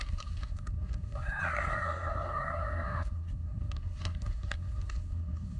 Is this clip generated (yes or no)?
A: yes